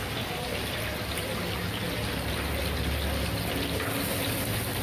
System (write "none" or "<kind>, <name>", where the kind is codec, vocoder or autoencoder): none